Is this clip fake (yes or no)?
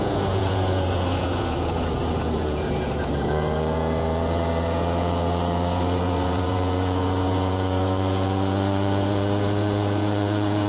yes